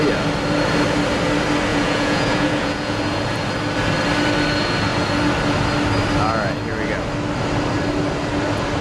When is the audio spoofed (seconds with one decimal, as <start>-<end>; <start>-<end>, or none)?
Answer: 1.7-3.0